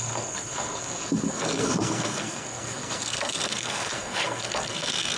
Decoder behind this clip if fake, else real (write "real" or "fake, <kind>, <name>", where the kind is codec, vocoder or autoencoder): fake, codec, SNAC